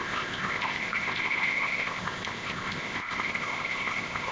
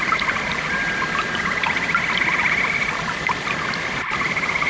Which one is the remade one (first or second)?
first